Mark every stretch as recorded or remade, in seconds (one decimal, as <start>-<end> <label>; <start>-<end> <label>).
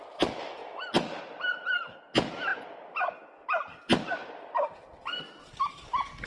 0.0-6.3 recorded